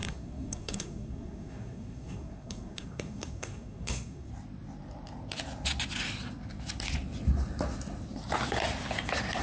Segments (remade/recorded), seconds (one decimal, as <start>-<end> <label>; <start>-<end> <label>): 0.0-4.3 remade; 4.3-9.4 recorded